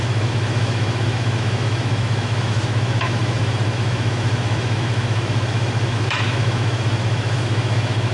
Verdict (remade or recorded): remade